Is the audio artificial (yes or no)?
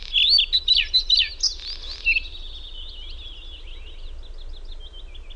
no